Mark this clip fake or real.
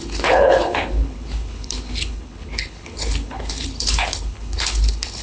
fake